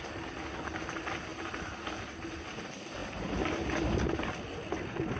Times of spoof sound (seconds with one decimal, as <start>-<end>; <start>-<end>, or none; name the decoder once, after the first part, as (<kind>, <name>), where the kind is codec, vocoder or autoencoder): none